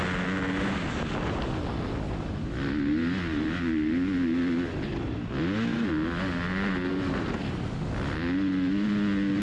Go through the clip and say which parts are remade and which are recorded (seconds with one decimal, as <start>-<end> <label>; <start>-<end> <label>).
0.0-9.4 recorded